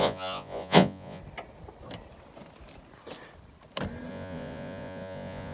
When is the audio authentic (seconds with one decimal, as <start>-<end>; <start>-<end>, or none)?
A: 1.2-4.1